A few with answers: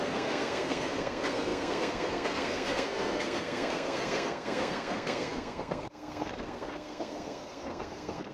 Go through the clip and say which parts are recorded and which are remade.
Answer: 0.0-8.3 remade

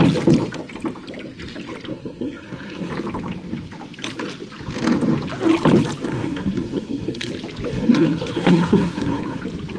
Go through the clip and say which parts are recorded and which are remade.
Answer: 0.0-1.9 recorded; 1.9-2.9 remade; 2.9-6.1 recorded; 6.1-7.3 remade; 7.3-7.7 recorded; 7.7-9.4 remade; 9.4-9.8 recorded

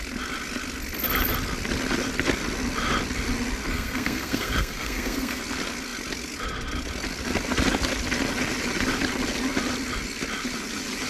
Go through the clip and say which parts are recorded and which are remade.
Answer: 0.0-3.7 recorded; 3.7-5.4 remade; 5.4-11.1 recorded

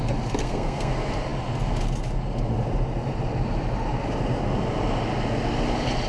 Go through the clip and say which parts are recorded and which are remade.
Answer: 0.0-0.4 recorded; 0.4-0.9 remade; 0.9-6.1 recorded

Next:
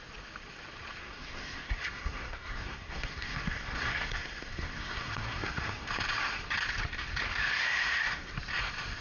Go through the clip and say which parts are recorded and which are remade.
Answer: 0.0-1.0 recorded; 1.0-5.9 remade; 5.9-7.4 recorded; 7.4-8.3 remade; 8.3-9.0 recorded

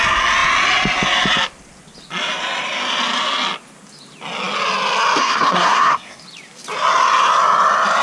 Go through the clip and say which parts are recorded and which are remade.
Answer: 0.0-5.2 recorded; 5.2-6.2 remade; 6.2-8.0 recorded

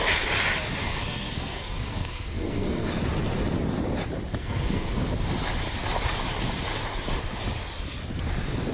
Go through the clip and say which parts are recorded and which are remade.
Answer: 0.0-0.8 recorded; 0.8-2.9 remade; 2.9-4.4 recorded; 4.4-5.1 remade; 5.1-8.7 recorded